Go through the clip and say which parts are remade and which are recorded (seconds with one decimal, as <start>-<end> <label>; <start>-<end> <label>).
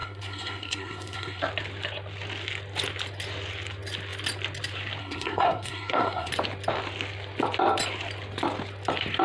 0.0-1.4 remade; 1.4-5.0 recorded; 5.0-6.3 remade; 6.3-9.2 recorded